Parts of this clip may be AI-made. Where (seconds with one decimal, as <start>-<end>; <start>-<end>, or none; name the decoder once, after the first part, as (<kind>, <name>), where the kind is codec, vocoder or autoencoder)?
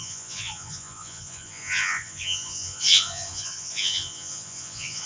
0.0-5.1 (vocoder, Vocos)